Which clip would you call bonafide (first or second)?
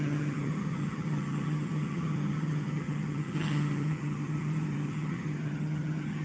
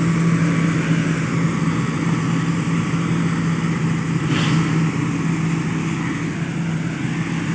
second